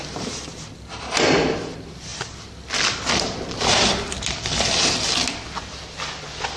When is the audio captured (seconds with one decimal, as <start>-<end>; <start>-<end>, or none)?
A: 0.0-6.6